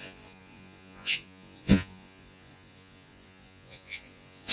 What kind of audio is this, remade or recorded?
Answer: remade